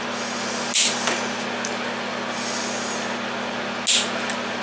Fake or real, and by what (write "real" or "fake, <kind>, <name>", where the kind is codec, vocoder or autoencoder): real